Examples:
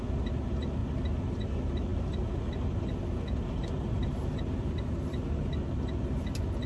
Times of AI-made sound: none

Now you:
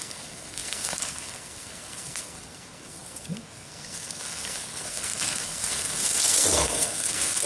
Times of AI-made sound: 0.0-7.5 (codec, SNAC)

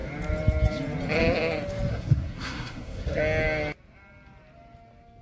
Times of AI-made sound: 1.9-3.2 (codec, SNAC)

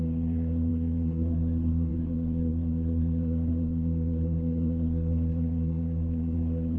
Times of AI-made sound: 0.0-6.8 (codec, SNAC)

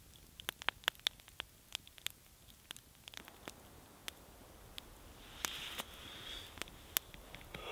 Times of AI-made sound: none

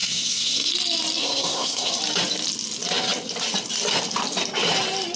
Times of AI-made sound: 0.0-0.7 (codec, SNAC); 1.2-1.9